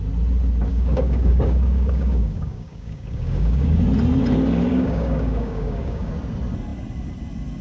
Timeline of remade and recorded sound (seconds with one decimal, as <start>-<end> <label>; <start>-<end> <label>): 0.0-0.7 recorded; 0.7-3.8 remade; 3.8-4.7 recorded; 4.7-6.1 remade; 6.1-7.6 recorded